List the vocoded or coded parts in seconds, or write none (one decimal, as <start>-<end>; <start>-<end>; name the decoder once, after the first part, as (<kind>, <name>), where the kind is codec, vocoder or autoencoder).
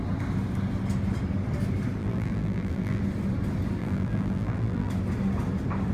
2.0-3.0 (vocoder, BigVGAN v2); 3.8-4.9